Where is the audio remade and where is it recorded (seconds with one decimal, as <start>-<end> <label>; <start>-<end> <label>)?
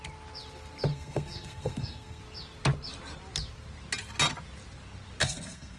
0.0-0.9 recorded; 0.9-2.2 remade; 2.2-5.2 recorded; 5.2-5.8 remade